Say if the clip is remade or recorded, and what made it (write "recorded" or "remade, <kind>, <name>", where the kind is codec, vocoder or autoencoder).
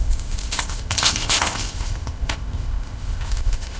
remade, codec, ZipCodec